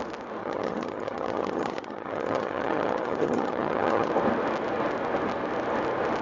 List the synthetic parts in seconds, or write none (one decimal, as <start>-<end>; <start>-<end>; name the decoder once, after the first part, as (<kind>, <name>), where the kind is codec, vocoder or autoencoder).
0.4-4.1 (vocoder, HiFi-GAN)